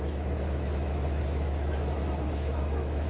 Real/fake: fake